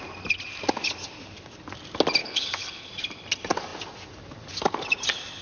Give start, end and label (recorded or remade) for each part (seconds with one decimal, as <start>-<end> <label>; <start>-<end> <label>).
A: 0.0-2.2 recorded; 2.2-2.9 remade; 2.9-5.4 recorded